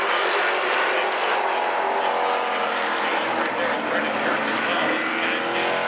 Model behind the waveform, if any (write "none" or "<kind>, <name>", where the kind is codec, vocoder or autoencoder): none